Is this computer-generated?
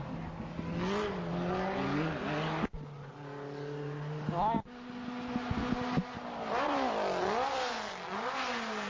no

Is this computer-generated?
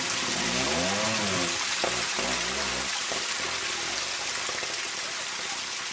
no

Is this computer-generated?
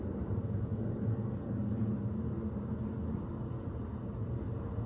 no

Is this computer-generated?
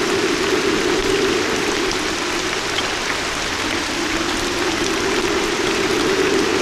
no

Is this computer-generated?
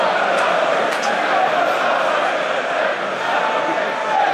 no